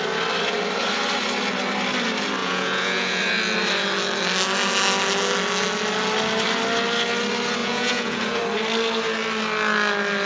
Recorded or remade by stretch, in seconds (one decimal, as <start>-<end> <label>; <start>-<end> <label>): 0.0-2.4 recorded; 2.4-3.2 remade; 3.2-7.6 recorded; 7.6-8.4 remade; 8.4-10.3 recorded